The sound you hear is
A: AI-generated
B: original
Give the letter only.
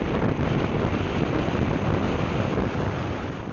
B